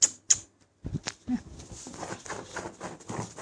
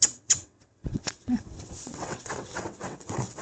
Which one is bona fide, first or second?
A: first